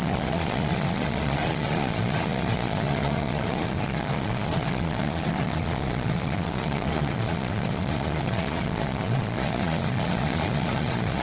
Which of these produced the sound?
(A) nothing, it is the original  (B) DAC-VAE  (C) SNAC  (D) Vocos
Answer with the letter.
D